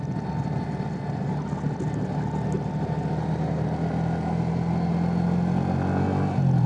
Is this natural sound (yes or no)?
yes